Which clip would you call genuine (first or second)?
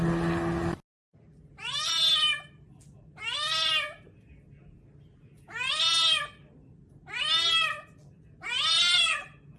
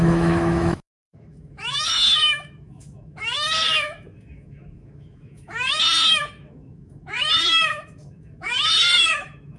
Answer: first